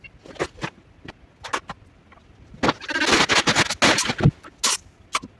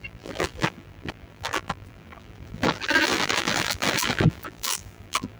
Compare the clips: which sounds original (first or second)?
first